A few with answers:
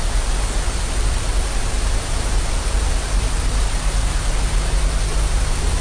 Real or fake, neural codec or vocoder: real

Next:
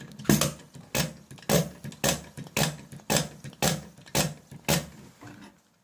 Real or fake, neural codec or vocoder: real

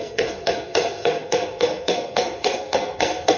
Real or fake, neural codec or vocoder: fake, codec, SNAC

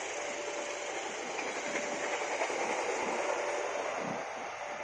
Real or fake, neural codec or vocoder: real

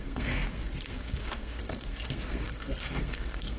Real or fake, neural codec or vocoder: fake, codec, SNAC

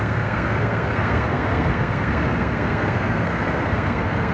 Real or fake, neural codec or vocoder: fake, codec, SNAC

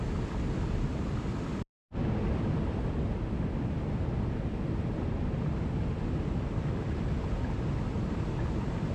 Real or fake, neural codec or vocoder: real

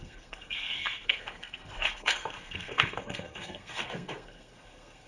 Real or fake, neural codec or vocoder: fake, codec, SNAC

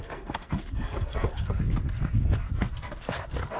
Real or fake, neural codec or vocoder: fake, codec, SNAC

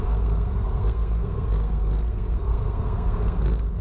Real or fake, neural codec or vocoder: fake, codec, SNAC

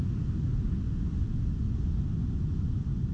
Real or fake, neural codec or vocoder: real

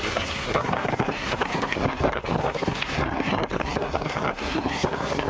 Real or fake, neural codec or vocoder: fake, codec, SNAC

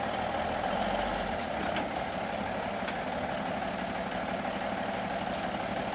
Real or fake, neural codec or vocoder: real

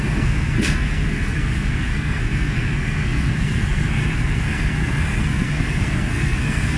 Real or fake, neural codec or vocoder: fake, codec, SNAC